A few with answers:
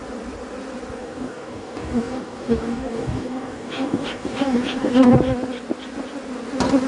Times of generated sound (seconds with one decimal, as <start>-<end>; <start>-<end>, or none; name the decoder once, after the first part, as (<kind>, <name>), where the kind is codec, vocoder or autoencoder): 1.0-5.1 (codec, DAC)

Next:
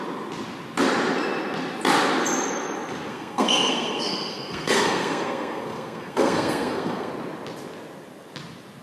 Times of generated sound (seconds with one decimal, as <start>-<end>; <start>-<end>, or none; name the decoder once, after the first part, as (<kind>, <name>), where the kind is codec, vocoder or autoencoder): 3.1-7.1 (codec, SNAC)

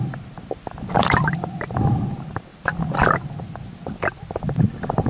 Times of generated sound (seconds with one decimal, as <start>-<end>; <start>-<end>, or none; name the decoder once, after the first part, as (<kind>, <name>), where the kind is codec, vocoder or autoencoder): none